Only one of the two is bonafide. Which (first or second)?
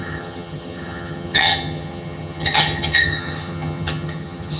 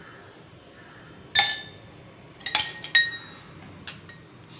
second